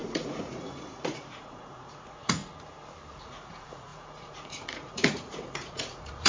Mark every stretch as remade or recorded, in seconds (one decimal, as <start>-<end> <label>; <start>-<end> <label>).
0.0-2.4 remade; 2.4-3.2 recorded; 3.2-6.3 remade